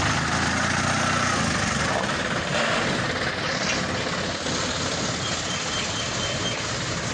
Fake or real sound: real